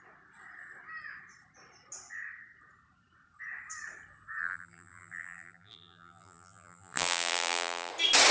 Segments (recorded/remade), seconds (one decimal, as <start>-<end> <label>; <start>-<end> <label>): 0.0-4.4 recorded; 4.4-7.9 remade; 7.9-8.3 recorded